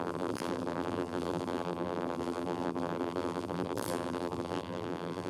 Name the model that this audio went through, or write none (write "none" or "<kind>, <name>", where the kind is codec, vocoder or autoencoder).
vocoder, BigVGAN v2